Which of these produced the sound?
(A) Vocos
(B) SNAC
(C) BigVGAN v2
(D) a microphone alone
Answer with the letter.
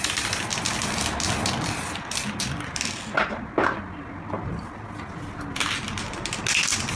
D